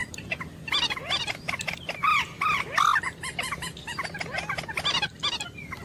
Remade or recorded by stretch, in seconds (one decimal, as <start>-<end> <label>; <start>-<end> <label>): 0.0-2.9 recorded; 2.9-4.2 remade; 4.2-5.8 recorded

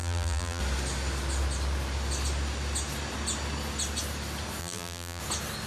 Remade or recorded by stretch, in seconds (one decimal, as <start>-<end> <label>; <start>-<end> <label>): 0.0-0.6 remade; 0.6-4.6 recorded; 4.6-5.2 remade; 5.2-5.7 recorded

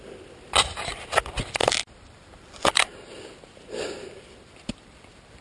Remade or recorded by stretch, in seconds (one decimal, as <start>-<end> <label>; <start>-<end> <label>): 0.0-5.4 recorded